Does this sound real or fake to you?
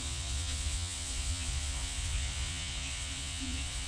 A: fake